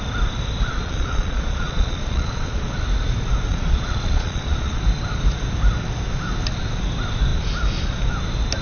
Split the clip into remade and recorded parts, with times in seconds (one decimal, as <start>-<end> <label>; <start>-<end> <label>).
0.0-0.7 recorded; 0.7-2.7 remade; 2.7-3.5 recorded; 3.5-4.8 remade; 4.8-8.6 recorded